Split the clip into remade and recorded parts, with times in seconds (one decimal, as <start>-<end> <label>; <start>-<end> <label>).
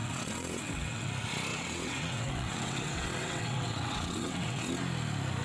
0.0-1.1 remade; 1.1-1.5 recorded; 1.5-4.7 remade; 4.7-5.4 recorded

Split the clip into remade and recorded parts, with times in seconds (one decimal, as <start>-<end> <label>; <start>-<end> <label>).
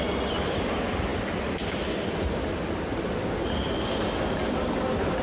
0.0-5.2 recorded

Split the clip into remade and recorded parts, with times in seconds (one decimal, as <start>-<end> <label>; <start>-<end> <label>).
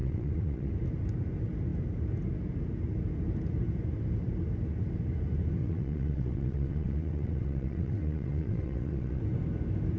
0.0-0.7 remade; 0.7-5.6 recorded; 5.6-9.2 remade; 9.2-10.0 recorded